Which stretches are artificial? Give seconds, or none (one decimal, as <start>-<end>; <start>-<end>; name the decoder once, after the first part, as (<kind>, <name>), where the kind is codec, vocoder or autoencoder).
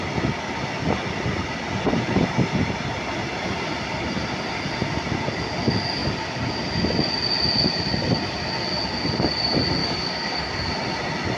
9.8-10.7 (codec, DAC)